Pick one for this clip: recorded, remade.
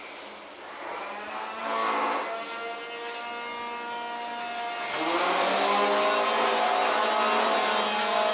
recorded